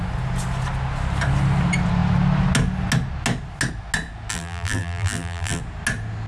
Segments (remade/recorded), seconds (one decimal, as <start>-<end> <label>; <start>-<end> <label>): 0.0-4.3 recorded; 4.3-5.6 remade; 5.6-6.3 recorded